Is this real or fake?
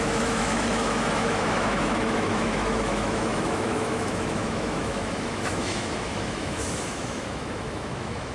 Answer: fake